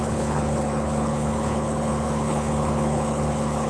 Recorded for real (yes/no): no